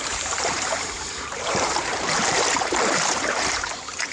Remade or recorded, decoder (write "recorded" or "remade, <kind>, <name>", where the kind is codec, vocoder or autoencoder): remade, vocoder, BigVGAN v2